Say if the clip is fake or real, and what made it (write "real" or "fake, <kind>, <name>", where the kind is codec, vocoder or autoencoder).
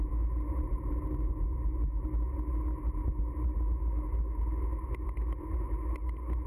real